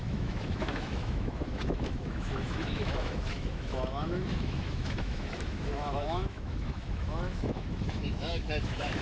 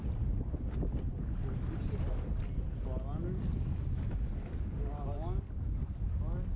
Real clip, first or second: second